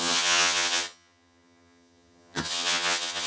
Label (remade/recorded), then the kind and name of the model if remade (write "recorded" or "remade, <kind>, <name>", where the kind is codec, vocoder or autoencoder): remade, vocoder, HiFi-GAN